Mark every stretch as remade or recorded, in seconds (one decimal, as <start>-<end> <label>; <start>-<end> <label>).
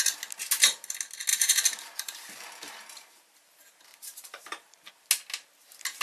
0.0-1.3 recorded; 1.3-4.9 remade; 4.9-6.0 recorded